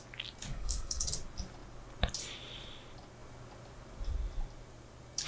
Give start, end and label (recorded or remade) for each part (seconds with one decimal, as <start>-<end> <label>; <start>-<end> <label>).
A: 0.0-0.5 recorded; 0.5-1.1 remade; 1.1-5.3 recorded